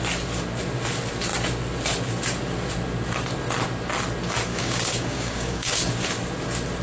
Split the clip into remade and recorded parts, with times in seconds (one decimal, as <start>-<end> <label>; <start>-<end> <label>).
0.0-4.5 recorded; 4.5-5.9 remade; 5.9-6.8 recorded